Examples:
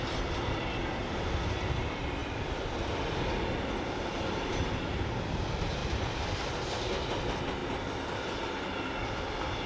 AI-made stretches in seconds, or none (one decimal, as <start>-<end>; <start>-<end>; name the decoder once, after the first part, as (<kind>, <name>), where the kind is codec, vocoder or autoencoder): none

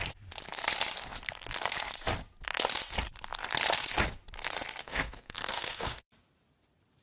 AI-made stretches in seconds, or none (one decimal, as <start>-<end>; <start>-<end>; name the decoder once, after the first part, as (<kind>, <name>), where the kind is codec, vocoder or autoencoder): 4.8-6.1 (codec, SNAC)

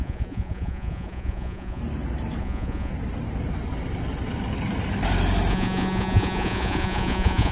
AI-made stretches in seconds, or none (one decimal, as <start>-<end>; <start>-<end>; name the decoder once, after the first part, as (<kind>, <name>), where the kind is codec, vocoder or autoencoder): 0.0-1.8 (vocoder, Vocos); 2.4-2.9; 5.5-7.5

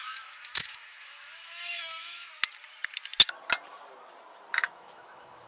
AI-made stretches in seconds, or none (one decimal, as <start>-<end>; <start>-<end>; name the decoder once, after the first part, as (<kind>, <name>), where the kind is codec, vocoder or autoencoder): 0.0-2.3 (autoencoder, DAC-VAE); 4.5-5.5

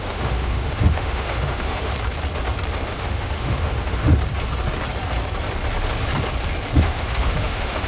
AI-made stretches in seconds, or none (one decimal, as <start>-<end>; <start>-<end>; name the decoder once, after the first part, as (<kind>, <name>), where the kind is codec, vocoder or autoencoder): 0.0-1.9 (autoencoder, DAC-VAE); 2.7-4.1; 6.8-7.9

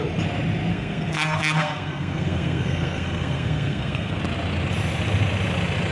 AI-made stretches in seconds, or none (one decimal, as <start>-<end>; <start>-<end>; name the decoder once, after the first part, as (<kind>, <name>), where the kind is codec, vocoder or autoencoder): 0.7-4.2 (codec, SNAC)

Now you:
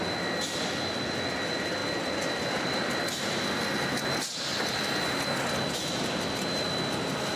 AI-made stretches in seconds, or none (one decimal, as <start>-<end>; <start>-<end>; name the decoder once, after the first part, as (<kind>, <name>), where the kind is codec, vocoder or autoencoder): none

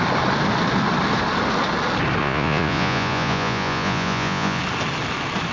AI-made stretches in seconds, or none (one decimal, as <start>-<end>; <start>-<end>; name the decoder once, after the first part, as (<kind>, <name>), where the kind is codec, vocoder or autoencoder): 2.2-4.6 (vocoder, Vocos)